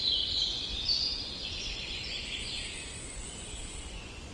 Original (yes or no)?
no